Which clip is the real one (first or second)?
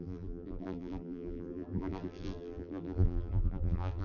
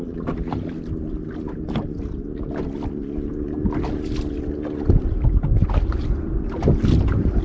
second